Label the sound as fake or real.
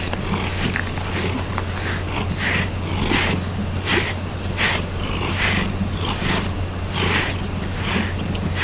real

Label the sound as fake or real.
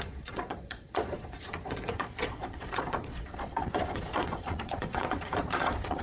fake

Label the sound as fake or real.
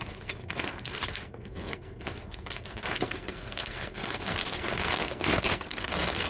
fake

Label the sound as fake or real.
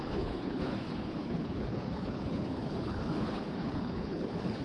fake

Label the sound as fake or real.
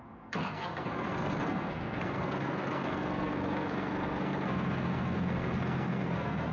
fake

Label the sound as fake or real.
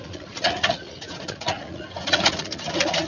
fake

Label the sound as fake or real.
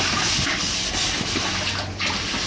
real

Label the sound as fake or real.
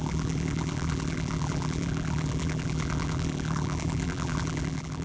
fake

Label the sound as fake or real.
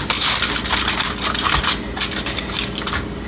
real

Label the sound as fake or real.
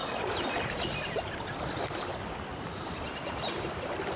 fake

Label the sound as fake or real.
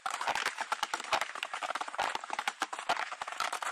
fake